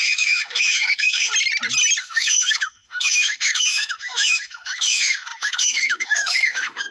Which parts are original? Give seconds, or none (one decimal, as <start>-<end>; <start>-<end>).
1.3-2.0